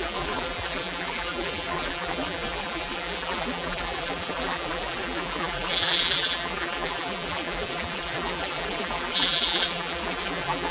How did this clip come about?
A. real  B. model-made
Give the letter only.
B